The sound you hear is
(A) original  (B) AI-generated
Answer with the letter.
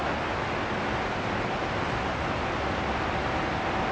A